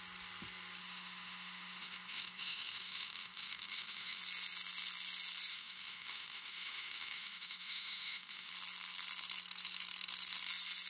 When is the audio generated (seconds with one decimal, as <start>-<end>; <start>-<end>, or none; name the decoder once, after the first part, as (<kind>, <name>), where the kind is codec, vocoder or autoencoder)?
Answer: 0.8-4.2 (autoencoder, DAC-VAE); 5.5-8.5